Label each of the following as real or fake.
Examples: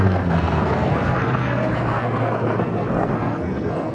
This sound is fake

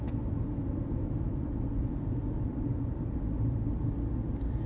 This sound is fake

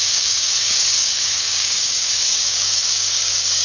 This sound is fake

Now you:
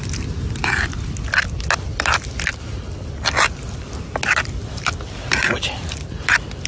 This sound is real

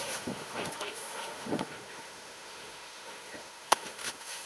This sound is fake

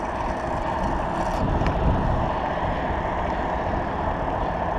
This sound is real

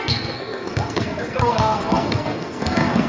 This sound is fake